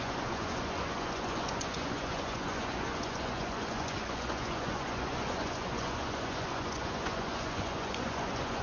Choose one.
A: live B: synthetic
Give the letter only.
B